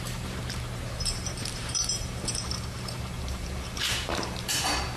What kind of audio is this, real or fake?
fake